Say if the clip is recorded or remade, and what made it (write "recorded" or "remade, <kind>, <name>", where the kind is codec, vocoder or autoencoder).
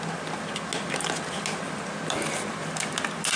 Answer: recorded